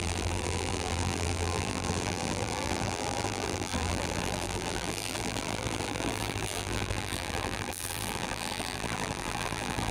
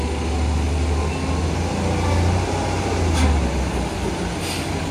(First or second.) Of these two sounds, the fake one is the first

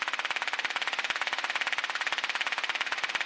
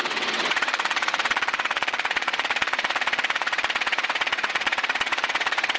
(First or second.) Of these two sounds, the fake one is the second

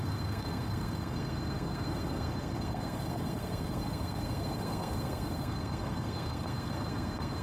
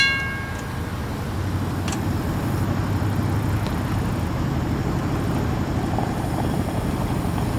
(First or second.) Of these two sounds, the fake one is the first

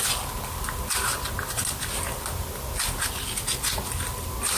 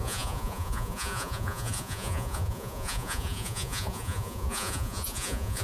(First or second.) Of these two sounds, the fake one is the second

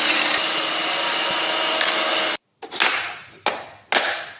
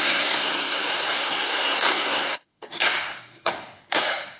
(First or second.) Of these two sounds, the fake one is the second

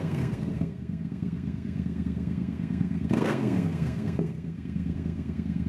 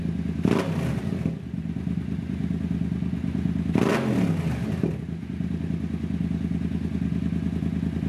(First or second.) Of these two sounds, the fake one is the first